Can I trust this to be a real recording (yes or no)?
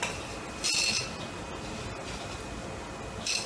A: yes